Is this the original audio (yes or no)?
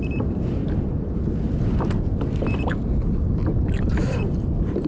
yes